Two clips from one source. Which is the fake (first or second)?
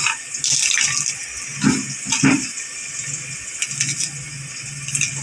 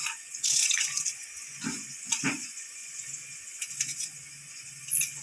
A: second